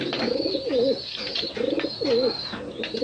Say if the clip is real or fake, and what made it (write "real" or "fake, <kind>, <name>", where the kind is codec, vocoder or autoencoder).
real